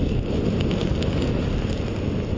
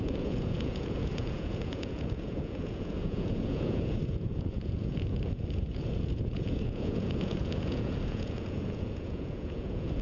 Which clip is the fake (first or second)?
second